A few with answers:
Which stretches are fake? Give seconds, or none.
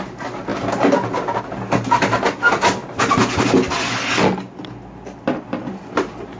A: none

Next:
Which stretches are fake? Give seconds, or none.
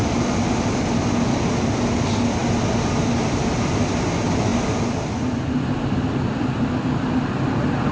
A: none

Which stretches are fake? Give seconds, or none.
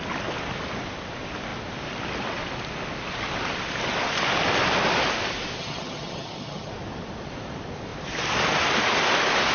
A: 5.6-6.7 (vocoder, HiFi-GAN)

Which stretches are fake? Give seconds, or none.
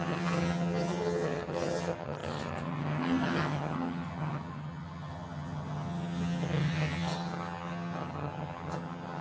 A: 0.0-9.2 (vocoder, HiFi-GAN)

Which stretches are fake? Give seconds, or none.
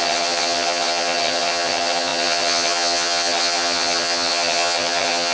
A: 0.0-5.3 (vocoder, HiFi-GAN)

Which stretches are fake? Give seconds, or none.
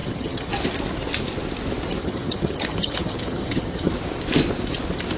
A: 0.0-0.5 (vocoder, HiFi-GAN); 2.0-3.9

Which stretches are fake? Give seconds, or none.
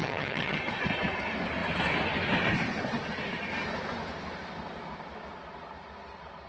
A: 0.0-0.6 (vocoder, HiFi-GAN)